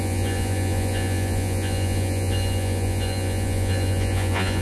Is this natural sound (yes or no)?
no